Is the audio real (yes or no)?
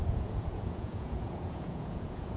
no